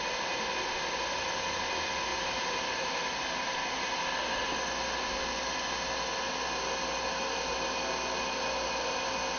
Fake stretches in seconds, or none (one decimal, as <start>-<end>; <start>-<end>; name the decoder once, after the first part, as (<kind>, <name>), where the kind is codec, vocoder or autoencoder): 2.1-4.0 (vocoder, BigVGAN v2)